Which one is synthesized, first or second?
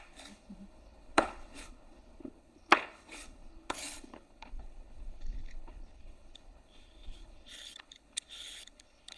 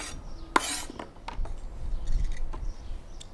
first